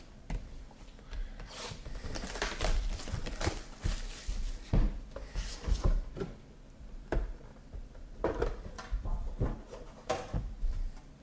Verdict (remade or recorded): remade